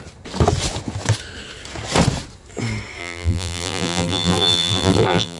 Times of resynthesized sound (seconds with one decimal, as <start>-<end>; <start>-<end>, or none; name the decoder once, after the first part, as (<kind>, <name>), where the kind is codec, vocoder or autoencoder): 3.0-5.4 (vocoder, BigVGAN v2)